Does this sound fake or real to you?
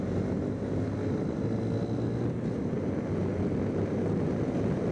real